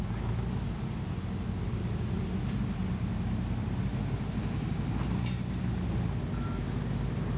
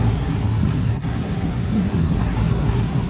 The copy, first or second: second